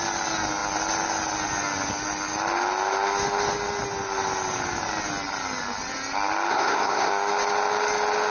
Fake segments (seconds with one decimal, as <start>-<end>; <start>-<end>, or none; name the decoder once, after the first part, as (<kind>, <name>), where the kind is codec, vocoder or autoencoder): 6.5-7.1 (codec, SNAC)